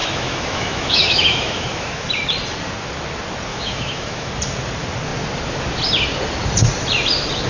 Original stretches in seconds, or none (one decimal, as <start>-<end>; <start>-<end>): 2.1-3.5; 4.3-7.5